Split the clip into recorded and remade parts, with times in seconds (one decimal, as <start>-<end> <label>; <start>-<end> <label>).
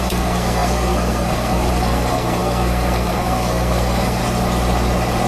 0.0-4.2 remade; 4.2-5.3 recorded